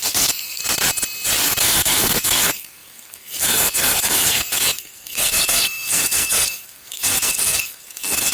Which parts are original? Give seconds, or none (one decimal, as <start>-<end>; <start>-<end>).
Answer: 0.6-1.6